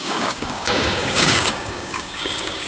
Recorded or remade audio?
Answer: remade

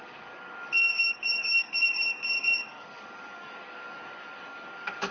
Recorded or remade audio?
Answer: remade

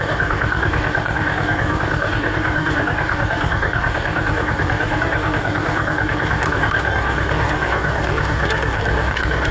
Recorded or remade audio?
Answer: remade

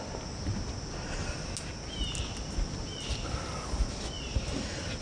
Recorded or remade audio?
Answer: recorded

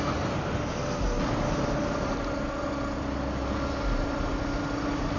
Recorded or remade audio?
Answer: recorded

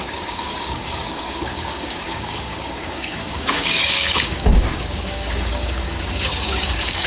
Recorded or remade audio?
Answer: remade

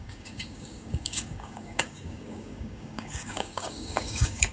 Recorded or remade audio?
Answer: remade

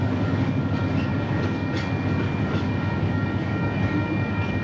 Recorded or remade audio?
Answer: remade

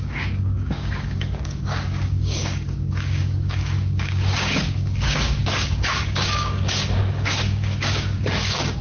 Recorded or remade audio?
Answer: remade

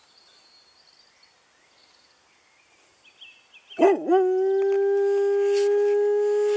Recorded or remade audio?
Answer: recorded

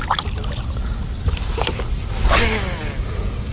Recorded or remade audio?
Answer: recorded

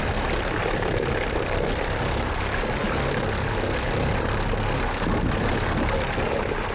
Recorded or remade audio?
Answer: recorded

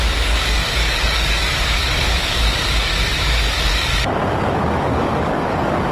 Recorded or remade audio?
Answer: remade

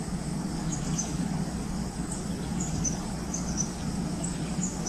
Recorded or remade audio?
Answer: remade